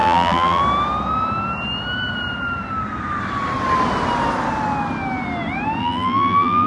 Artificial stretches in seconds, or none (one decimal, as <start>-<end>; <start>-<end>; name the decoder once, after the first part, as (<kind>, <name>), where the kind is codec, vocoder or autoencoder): 0.0-0.6 (vocoder, BigVGAN v2); 5.8-6.7